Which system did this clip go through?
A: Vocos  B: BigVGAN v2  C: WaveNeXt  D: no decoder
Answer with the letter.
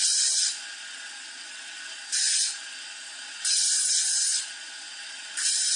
D